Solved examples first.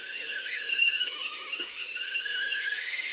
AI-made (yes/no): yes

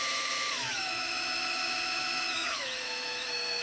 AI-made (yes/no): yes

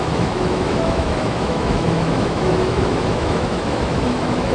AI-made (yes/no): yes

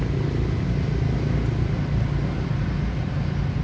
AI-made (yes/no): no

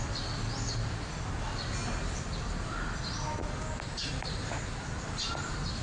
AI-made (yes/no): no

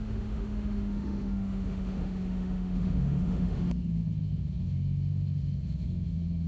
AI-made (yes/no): yes